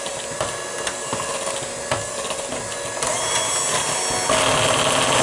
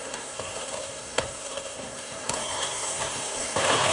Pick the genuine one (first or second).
first